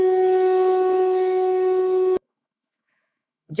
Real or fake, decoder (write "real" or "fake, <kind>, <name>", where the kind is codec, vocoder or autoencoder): fake, autoencoder, DAC-VAE